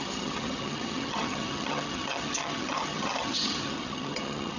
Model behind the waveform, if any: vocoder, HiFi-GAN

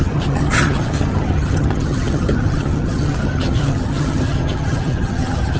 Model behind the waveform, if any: vocoder, HiFi-GAN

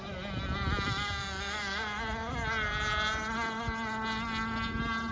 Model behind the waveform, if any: none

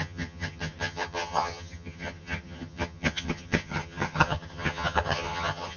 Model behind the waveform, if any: vocoder, HiFi-GAN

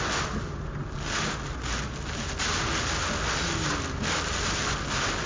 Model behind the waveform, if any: none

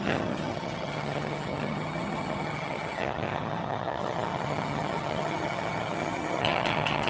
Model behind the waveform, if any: vocoder, HiFi-GAN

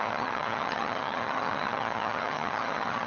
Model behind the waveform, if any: vocoder, HiFi-GAN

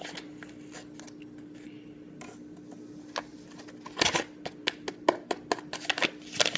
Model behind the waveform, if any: none